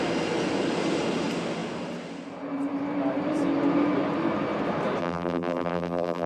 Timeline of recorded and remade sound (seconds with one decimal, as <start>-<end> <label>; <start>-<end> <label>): 0.0-5.0 recorded; 5.0-6.3 remade